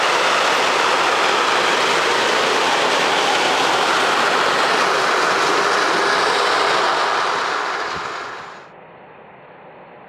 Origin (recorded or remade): recorded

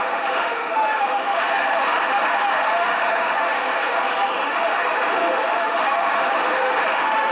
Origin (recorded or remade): remade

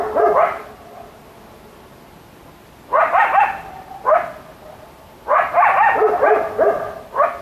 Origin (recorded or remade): recorded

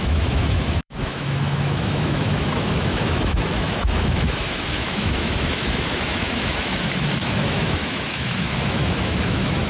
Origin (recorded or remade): remade